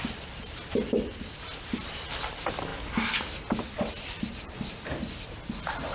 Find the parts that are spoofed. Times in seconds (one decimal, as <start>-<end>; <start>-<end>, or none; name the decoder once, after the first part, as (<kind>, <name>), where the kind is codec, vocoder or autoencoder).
none